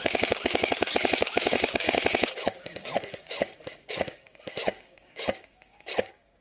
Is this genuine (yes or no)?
no